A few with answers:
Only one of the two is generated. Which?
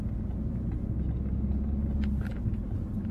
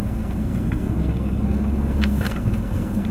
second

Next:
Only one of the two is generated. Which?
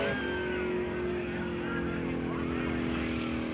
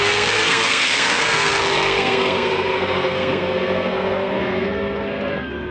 second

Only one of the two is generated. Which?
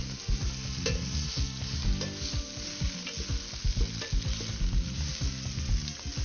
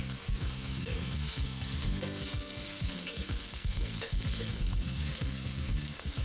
second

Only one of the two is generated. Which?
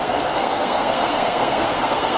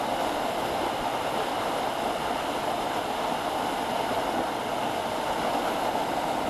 first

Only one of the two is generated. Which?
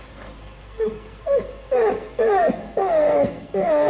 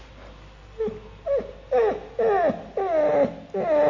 first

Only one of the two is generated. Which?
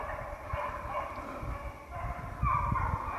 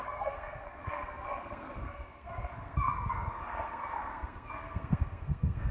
second